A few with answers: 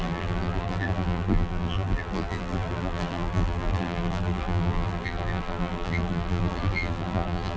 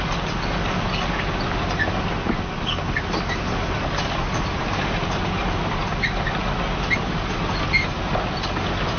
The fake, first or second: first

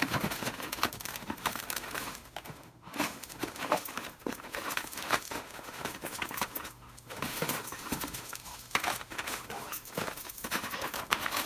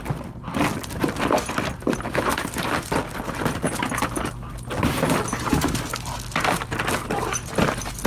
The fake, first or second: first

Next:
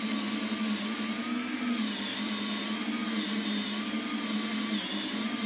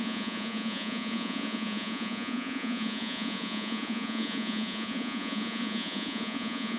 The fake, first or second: second